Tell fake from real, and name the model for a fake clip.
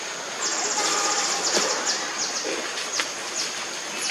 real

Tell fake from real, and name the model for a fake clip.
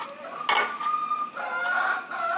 real